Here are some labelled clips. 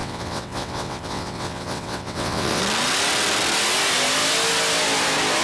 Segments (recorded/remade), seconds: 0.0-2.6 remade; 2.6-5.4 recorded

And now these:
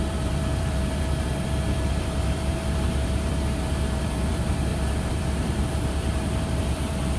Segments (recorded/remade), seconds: 0.0-7.2 remade

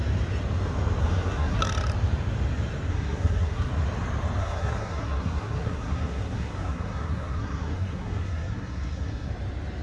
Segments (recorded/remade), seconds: 0.0-1.0 recorded; 1.0-1.6 remade; 1.6-2.9 recorded; 2.9-3.7 remade; 3.7-4.4 recorded; 4.4-9.3 remade; 9.3-9.8 recorded